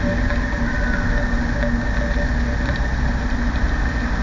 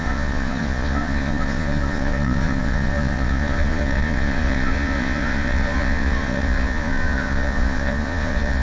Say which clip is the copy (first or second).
second